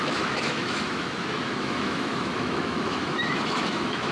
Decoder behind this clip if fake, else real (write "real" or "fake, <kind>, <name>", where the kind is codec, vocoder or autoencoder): fake, autoencoder, DAC-VAE